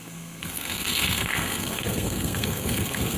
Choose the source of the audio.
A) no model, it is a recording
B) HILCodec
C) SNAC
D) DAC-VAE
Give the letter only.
C